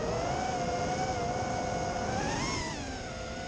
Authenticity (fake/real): real